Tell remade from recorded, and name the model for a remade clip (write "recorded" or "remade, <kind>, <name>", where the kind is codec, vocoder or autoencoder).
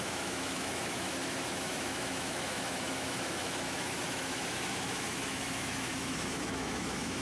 remade, autoencoder, DAC-VAE